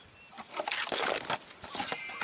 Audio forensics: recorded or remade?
recorded